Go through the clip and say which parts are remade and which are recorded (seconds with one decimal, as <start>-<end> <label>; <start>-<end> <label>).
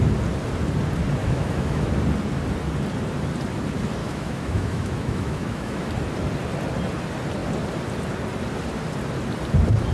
0.0-1.2 recorded; 1.2-1.9 remade; 1.9-4.0 recorded; 4.0-5.9 remade; 5.9-9.9 recorded